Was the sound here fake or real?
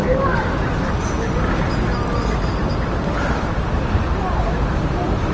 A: fake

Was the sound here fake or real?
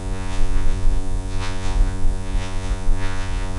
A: fake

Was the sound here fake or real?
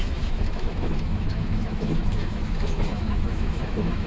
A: fake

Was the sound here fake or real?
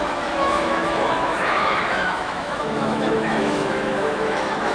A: fake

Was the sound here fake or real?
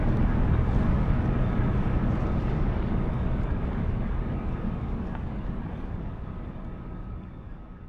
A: fake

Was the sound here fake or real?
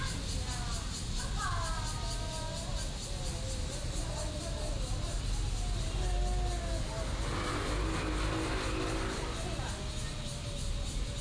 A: real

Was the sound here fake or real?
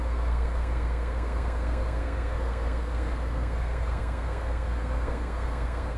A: fake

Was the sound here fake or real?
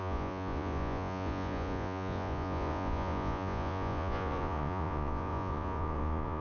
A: fake